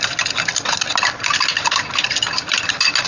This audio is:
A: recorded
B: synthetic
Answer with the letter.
A